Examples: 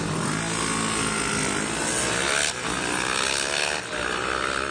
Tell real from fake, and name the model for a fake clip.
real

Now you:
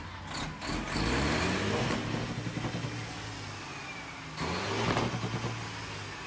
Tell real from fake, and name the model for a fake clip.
real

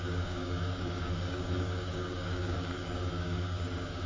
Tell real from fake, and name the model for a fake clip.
fake, codec, DAC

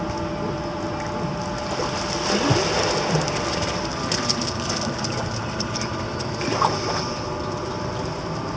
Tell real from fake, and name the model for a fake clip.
real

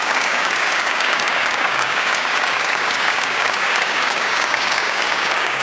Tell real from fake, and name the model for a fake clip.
fake, codec, DAC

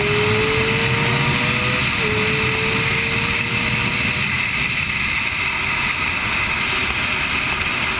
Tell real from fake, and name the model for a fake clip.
real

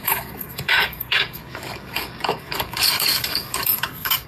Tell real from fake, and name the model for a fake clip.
fake, codec, DAC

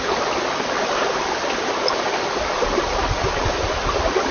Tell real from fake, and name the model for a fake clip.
real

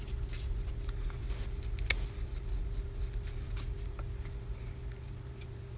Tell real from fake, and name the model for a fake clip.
real